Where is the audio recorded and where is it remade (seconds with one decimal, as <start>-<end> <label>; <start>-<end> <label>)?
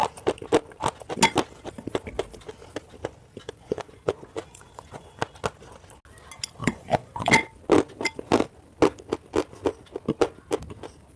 0.0-3.4 recorded; 3.4-5.2 remade; 5.2-6.6 recorded; 6.6-7.3 remade; 7.3-11.2 recorded